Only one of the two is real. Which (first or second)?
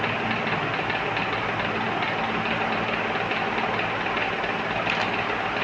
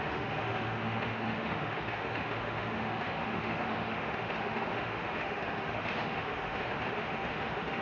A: first